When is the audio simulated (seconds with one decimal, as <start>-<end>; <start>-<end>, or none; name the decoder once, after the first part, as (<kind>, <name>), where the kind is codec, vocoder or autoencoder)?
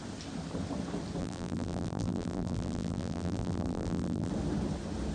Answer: 1.2-4.3 (vocoder, BigVGAN v2)